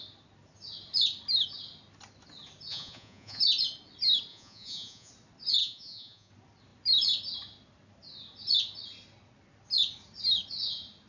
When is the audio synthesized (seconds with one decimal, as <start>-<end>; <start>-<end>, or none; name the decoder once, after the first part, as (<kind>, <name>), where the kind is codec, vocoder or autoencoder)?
2.7-3.4 (vocoder, Vocos); 4.3-5.1; 5.6-6.3